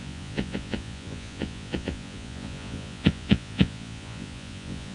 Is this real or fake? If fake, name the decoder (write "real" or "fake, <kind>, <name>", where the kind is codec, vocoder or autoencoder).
fake, vocoder, Vocos